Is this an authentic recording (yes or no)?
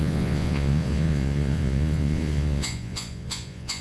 no